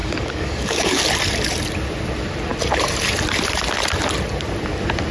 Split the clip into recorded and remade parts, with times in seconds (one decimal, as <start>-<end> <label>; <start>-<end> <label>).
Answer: 0.0-1.0 remade; 1.0-5.1 recorded